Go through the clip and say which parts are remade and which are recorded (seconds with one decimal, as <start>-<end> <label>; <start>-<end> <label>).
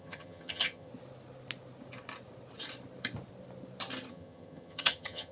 0.0-0.9 remade; 0.9-4.1 recorded; 4.1-5.3 remade